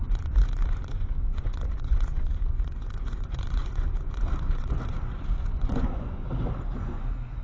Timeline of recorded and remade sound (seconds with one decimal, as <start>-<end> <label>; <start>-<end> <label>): 0.0-6.2 remade; 6.2-6.8 recorded; 6.8-7.4 remade